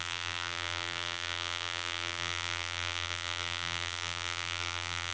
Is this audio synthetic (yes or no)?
yes